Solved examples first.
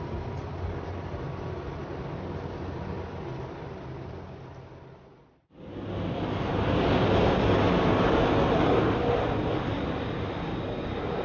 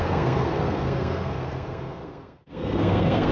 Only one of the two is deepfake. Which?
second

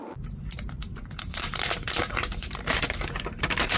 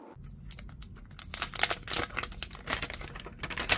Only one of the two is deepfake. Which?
first